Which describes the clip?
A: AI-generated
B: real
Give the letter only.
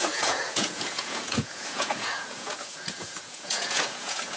A